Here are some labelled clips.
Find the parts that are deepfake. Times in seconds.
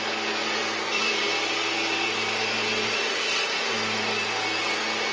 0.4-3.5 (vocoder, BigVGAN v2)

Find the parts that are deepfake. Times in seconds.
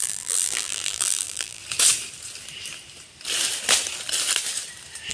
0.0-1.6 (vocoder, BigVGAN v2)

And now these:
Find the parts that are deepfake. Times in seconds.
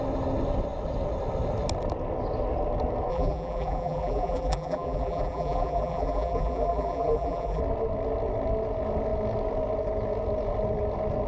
3.1-7.6 (vocoder, BigVGAN v2)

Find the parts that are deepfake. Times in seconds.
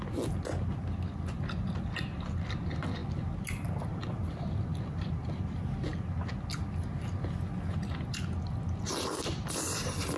0.0-3.0 (vocoder, BigVGAN v2); 3.9-5.9; 8.8-10.2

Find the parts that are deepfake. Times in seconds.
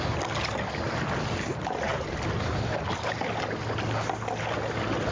none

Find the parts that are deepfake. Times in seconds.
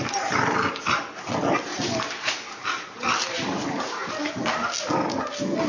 1.7-4.1 (vocoder, BigVGAN v2)